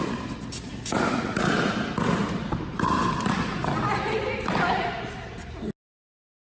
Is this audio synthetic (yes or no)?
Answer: no